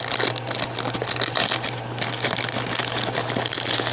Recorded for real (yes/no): yes